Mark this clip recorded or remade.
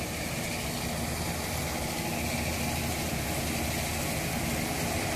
recorded